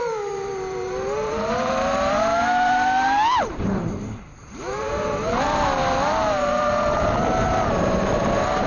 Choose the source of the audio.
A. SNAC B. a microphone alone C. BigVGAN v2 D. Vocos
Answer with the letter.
C